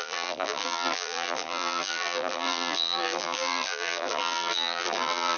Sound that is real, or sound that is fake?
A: fake